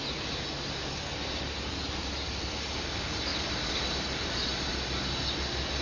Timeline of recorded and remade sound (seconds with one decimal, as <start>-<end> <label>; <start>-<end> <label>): 0.0-1.1 recorded; 1.1-2.1 remade; 2.1-3.3 recorded; 3.3-4.7 remade; 4.7-5.8 recorded